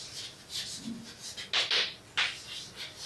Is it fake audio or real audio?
real